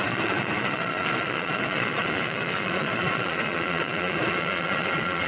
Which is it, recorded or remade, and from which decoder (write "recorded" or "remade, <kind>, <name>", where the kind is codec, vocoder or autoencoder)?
remade, vocoder, Vocos